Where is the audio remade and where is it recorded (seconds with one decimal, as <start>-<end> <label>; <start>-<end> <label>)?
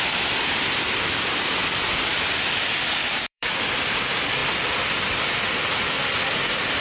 0.0-3.0 recorded; 3.0-3.6 remade; 3.6-6.8 recorded